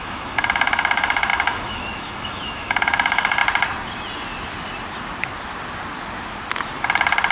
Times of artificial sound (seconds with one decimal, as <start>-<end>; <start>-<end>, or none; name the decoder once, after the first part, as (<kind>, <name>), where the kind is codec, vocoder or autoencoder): 0.0-3.4 (autoencoder, DAC-VAE)